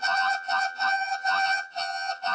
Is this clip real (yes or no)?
no